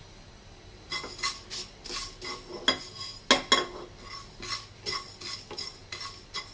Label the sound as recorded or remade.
recorded